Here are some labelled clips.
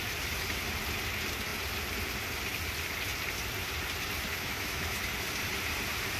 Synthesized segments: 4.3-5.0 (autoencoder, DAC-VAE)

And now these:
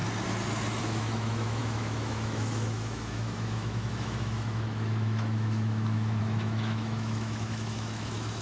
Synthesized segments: 0.8-8.4 (autoencoder, DAC-VAE)

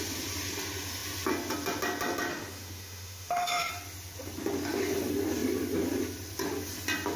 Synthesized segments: 2.3-3.7 (autoencoder, DAC-VAE)

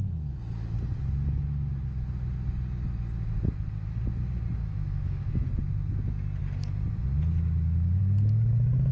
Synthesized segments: 4.6-5.3 (autoencoder, DAC-VAE)

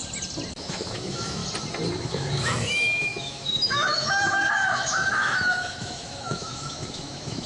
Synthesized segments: 0.6-1.4 (autoencoder, DAC-VAE); 2.0-7.5

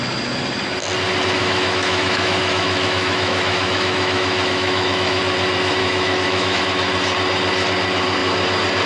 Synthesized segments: 1.4-5.2 (autoencoder, DAC-VAE); 5.8-6.6

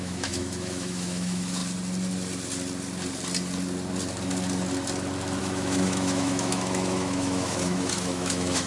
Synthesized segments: 0.0-1.6 (autoencoder, DAC-VAE); 5.4-8.7